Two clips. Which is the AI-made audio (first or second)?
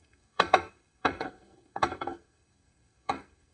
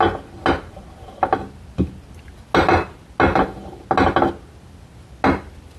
first